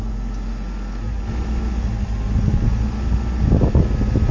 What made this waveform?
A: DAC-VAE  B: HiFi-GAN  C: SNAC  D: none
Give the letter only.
D